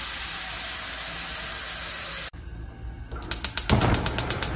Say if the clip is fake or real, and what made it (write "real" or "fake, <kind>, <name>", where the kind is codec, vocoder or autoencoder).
real